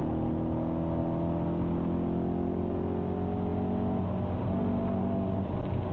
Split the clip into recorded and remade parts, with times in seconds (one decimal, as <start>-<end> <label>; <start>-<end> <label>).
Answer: 0.0-5.9 recorded